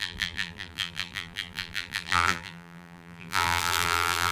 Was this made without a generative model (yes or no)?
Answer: no